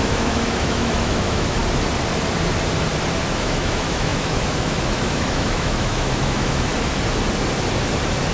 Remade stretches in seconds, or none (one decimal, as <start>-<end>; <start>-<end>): 0.0-1.6; 3.3-6.7